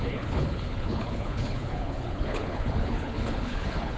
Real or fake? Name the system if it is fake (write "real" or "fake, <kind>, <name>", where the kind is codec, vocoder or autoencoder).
fake, codec, HILCodec